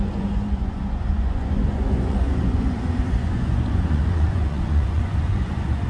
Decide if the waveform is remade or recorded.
remade